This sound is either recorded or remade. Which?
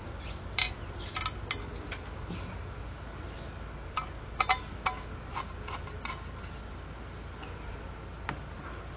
recorded